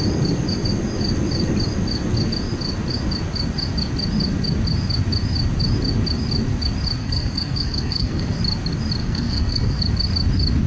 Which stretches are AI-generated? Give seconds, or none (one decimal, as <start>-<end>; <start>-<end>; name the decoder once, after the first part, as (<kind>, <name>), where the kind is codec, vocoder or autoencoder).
7.0-8.4 (codec, SNAC); 9.0-9.8